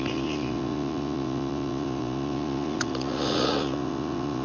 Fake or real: fake